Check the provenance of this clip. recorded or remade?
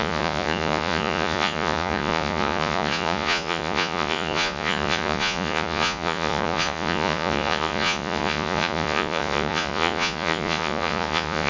remade